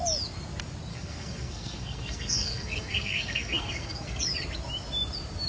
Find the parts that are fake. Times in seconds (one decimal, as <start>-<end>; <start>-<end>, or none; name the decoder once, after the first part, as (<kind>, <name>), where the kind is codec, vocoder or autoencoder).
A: 0.9-4.2 (codec, SNAC)